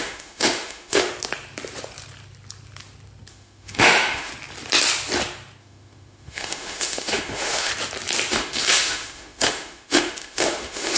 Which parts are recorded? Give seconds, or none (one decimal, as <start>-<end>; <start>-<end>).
1.1-3.3; 4.3-5.6; 7.7-8.3